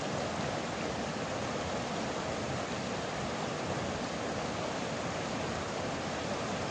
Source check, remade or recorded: recorded